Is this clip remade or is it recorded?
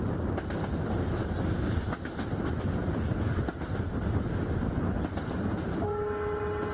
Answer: recorded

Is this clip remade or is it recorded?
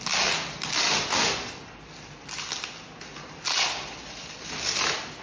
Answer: recorded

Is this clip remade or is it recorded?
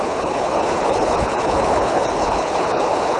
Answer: remade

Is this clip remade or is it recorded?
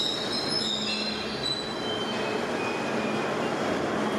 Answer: recorded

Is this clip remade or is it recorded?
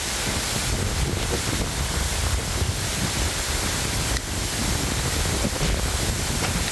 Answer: recorded